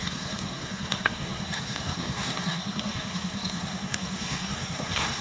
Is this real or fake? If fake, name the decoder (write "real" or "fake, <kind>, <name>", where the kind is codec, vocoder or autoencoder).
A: fake, codec, SNAC